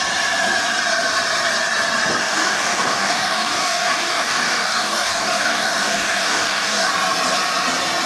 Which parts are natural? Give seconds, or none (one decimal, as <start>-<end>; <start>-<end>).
0.0-2.2; 6.9-8.1